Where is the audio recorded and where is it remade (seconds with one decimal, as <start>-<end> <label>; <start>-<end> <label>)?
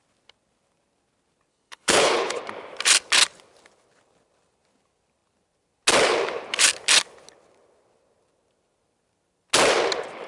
0.0-1.5 recorded; 1.5-2.4 remade; 2.4-10.3 recorded